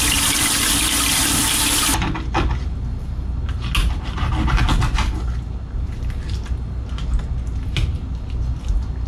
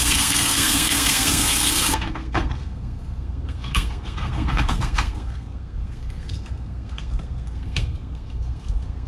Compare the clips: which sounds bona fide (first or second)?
first